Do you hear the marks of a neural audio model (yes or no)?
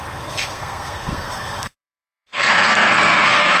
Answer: yes